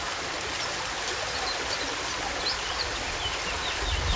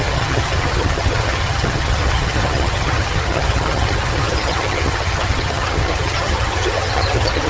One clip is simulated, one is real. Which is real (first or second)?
first